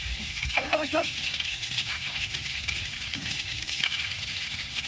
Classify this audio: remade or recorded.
remade